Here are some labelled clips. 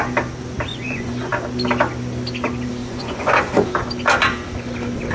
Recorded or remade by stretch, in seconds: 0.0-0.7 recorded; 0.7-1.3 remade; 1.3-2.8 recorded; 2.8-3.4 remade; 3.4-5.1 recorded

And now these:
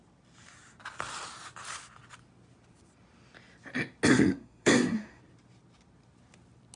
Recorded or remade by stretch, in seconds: 0.0-4.1 recorded; 4.1-5.2 remade; 5.2-6.8 recorded

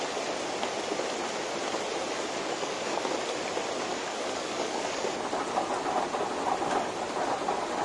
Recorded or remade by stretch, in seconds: 0.0-2.4 recorded; 2.4-3.0 remade; 3.0-3.9 recorded; 3.9-5.0 remade; 5.0-7.8 recorded

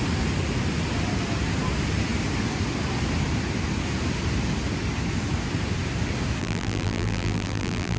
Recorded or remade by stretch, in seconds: 0.0-6.4 recorded; 6.4-8.0 remade

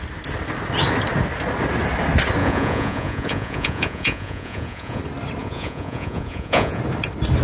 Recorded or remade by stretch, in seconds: 0.0-2.4 recorded; 2.4-5.0 remade; 5.0-5.4 recorded; 5.4-6.8 remade; 6.8-7.4 recorded